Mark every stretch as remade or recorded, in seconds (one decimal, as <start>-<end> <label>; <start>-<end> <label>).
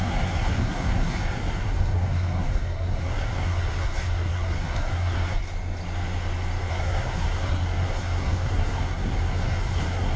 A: 0.0-5.4 remade; 5.4-6.7 recorded; 6.7-10.2 remade